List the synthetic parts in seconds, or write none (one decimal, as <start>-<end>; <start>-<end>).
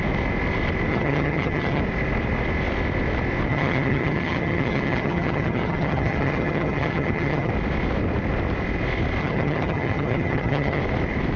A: 0.9-1.8; 3.5-7.5; 9.2-10.8